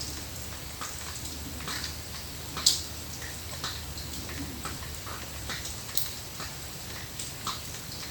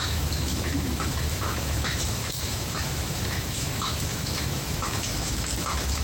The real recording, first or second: first